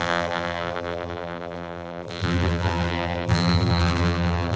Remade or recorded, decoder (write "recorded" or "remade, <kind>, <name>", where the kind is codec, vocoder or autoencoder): remade, vocoder, BigVGAN v2